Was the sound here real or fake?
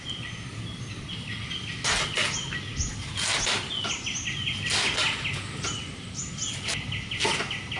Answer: real